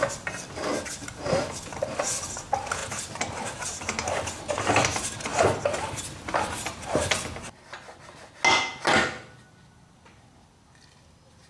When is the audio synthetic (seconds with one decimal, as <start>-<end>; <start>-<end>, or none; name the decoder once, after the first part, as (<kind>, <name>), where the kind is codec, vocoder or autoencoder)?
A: none